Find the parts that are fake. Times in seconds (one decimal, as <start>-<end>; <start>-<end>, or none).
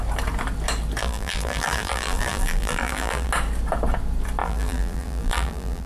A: 1.0-3.3; 4.4-5.9